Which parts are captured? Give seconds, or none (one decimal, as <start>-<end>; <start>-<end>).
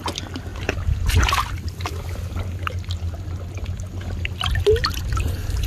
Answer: 0.0-5.7